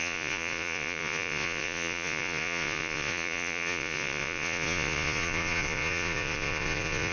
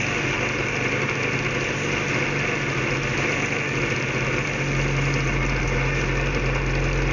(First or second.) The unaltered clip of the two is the second